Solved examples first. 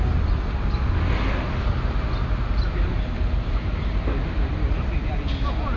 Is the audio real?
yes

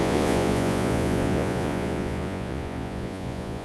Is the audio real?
no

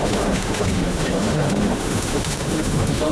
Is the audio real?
no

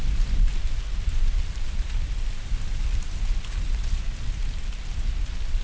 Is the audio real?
yes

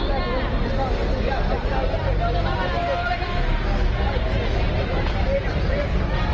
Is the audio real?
yes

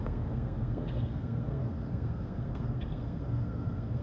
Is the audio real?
no